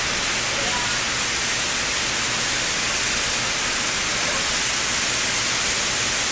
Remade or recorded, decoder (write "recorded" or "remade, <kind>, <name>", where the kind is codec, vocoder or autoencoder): recorded